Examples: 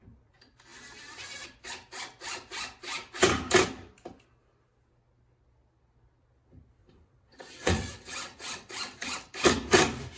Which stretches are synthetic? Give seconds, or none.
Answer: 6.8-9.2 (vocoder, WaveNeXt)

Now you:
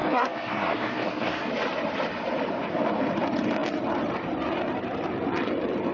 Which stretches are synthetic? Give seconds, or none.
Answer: 0.0-1.5 (codec, SNAC)

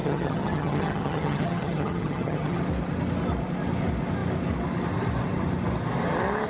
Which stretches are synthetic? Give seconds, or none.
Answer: 0.0-2.6 (vocoder, HiFi-GAN)

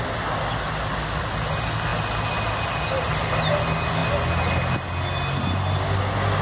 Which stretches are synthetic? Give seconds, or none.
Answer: none

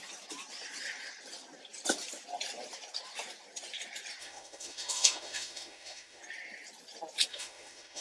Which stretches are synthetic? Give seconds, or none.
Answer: 4.2-6.2 (autoencoder, DAC-VAE); 7.3-8.0

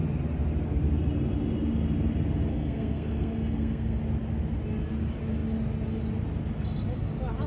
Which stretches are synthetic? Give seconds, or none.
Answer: 2.5-4.0 (codec, SNAC)